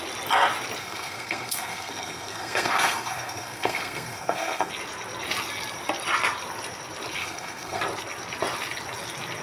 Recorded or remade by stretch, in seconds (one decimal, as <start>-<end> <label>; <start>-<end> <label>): 0.0-0.8 recorded; 0.8-4.7 remade; 4.7-7.2 recorded; 7.2-7.8 remade; 7.8-9.4 recorded